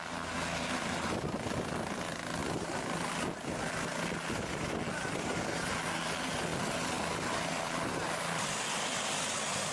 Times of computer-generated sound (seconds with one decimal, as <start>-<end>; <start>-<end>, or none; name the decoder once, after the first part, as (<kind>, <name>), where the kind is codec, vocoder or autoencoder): none